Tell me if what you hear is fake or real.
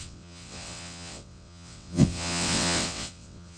fake